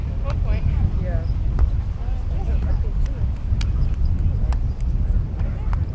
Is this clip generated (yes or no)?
no